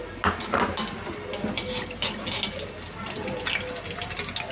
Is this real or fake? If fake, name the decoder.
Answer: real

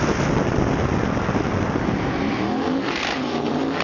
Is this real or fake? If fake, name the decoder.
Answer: real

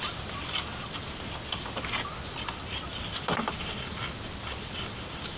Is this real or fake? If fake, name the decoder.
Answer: real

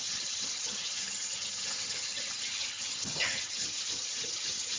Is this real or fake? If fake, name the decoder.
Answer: fake, vocoder, HiFi-GAN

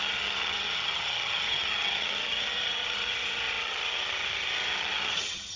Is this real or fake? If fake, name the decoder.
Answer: fake, vocoder, HiFi-GAN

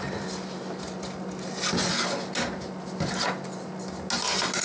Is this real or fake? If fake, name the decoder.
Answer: real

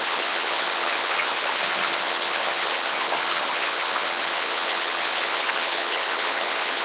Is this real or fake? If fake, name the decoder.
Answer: fake, vocoder, HiFi-GAN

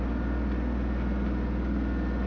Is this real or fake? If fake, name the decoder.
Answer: real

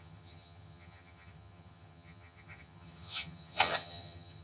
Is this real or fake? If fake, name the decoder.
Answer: fake, vocoder, HiFi-GAN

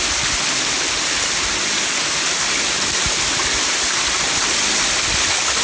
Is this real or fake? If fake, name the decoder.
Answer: real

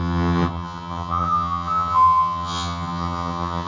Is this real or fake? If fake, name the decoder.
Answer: fake, vocoder, HiFi-GAN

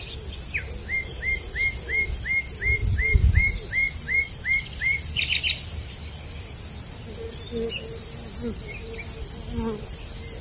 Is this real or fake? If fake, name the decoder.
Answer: real